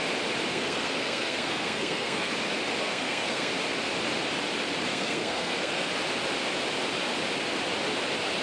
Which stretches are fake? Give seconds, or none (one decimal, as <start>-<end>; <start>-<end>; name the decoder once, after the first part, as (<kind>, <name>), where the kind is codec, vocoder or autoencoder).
0.5-2.3 (codec, SNAC); 2.8-3.5; 4.9-5.9